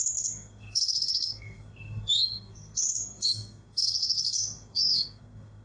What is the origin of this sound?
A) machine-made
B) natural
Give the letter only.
A